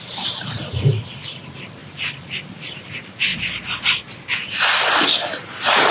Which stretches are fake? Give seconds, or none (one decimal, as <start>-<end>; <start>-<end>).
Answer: 0.0-3.3

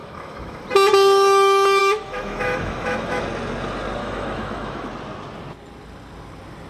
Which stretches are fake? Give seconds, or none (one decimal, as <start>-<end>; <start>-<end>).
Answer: 0.0-0.6; 1.8-3.2; 4.0-4.9

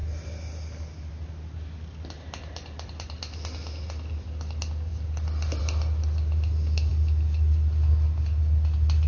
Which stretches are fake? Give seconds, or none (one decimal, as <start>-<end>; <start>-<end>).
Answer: none

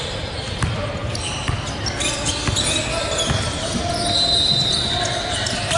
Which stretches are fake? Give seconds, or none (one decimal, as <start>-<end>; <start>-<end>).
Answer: 0.4-0.9

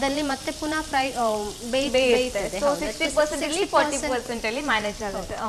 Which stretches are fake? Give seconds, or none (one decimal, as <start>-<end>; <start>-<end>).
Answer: 0.0-2.2; 2.8-5.5

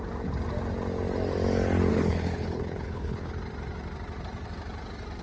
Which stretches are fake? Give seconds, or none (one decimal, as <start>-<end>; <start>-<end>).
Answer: 1.9-3.3